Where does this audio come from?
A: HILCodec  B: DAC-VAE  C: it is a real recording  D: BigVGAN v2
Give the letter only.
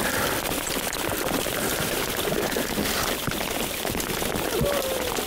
D